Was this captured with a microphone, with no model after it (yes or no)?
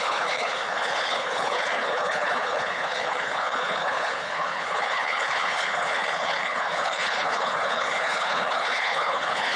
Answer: no